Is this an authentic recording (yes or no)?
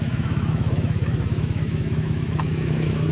no